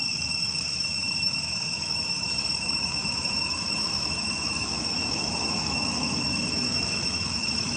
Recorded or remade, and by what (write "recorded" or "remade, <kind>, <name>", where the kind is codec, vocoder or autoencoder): remade, autoencoder, DAC-VAE